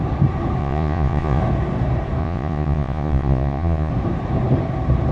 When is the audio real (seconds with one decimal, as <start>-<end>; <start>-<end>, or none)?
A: 0.0-0.6; 1.4-2.2; 3.9-5.1